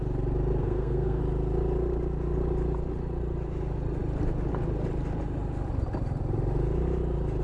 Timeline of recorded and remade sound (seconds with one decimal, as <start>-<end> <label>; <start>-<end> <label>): 0.0-0.6 recorded; 0.6-1.2 remade; 1.2-7.4 recorded